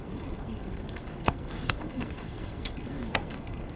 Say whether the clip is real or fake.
fake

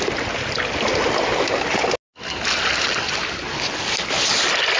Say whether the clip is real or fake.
real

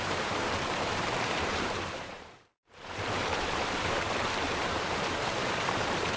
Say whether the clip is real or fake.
fake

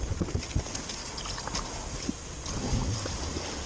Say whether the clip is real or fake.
real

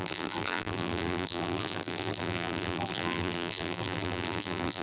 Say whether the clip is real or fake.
fake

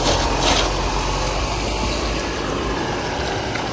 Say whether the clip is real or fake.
real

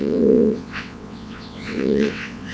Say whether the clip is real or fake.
fake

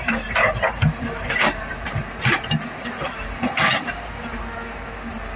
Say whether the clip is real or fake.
real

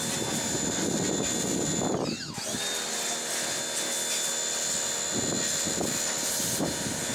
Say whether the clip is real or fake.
real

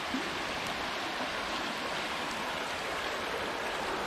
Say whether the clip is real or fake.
real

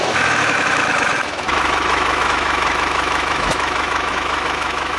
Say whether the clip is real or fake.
fake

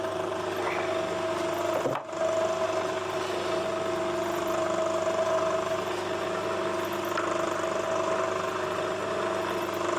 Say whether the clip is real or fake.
real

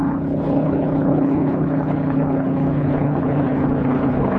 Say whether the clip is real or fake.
fake